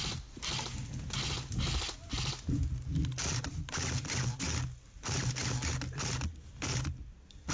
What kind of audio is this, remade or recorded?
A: recorded